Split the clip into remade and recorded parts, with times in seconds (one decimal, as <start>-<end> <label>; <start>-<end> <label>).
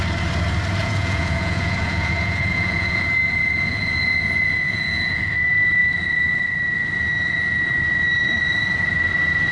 0.0-0.8 recorded; 0.8-5.3 remade; 5.3-9.5 recorded